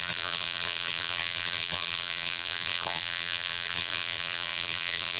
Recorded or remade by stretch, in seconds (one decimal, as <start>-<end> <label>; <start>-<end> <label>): 0.0-5.2 remade